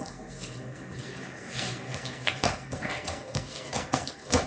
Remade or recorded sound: remade